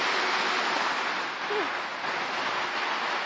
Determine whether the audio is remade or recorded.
recorded